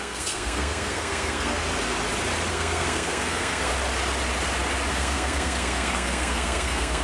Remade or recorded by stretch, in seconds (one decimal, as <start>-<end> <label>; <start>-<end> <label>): 0.0-1.6 remade; 1.6-2.5 recorded; 2.5-3.7 remade; 3.7-4.9 recorded; 4.9-7.0 remade